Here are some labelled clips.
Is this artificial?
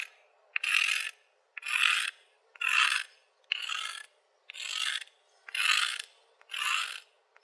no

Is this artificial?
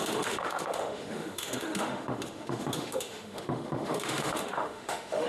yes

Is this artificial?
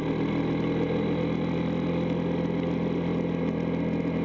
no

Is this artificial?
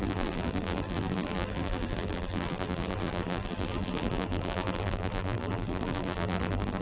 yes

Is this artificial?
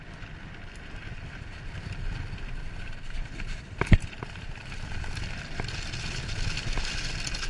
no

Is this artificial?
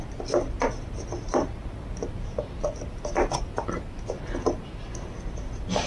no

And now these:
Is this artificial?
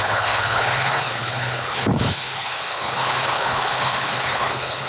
yes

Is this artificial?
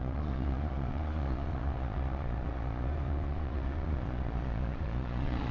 yes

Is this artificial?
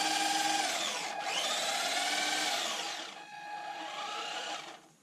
no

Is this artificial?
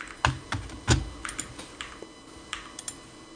no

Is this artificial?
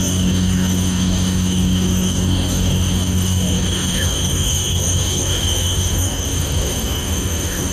yes